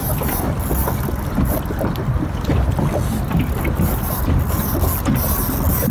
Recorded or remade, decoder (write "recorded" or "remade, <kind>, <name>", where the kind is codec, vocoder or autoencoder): recorded